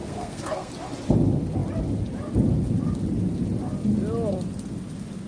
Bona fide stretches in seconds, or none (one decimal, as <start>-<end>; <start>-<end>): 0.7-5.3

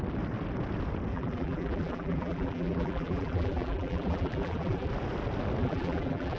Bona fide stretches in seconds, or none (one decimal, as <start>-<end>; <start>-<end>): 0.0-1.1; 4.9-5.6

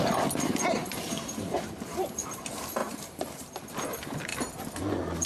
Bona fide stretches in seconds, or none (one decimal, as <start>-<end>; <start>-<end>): 0.0-0.8; 2.4-2.8; 3.7-5.3